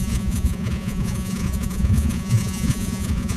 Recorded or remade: remade